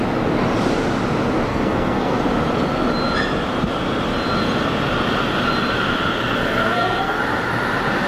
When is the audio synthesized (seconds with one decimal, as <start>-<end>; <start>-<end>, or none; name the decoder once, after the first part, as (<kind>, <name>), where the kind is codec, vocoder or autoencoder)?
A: 1.5-2.2 (codec, SNAC); 6.4-7.2

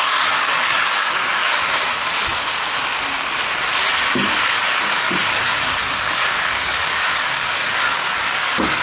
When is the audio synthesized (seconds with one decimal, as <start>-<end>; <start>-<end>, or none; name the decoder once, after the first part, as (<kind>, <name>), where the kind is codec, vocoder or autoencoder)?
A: 0.0-1.6 (codec, DAC); 4.5-8.8

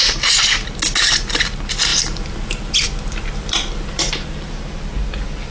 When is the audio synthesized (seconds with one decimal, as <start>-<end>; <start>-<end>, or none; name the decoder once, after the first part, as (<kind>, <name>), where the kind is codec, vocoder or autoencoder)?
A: 1.9-4.0 (vocoder, BigVGAN v2)